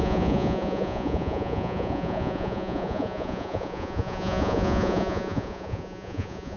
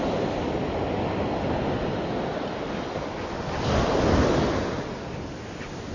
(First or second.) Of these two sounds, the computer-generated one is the first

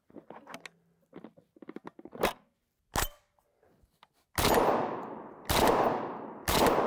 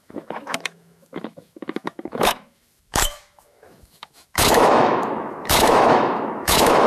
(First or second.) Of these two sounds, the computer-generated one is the second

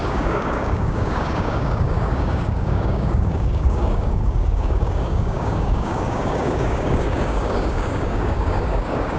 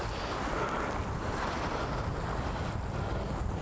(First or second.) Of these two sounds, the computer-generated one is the first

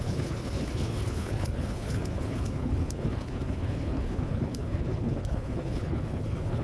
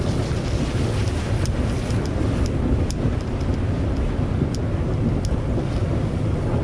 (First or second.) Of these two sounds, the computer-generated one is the first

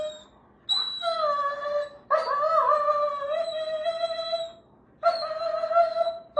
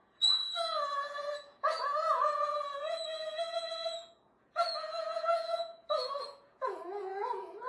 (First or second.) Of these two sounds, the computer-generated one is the second